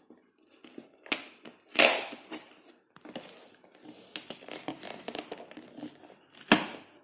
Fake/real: real